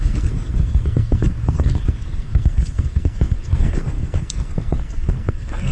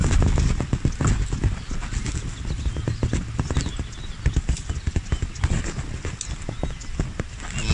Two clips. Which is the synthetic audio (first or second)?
first